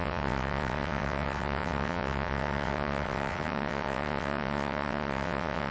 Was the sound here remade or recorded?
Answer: remade